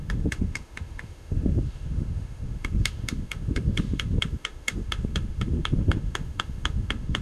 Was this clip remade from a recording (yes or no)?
yes